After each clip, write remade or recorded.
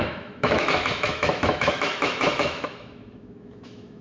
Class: remade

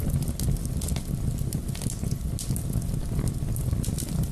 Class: recorded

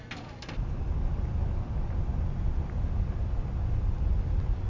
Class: recorded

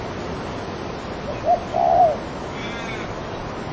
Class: recorded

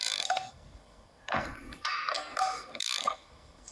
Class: remade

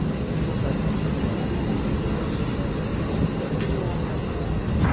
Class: recorded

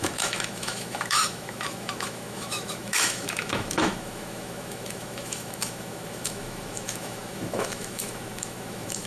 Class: remade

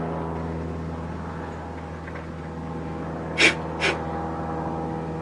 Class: recorded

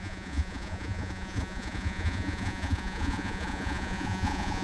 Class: remade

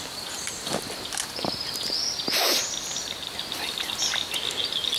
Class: recorded